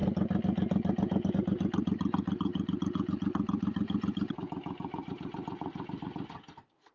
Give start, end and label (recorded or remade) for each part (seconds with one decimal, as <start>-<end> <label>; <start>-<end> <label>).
0.0-6.9 recorded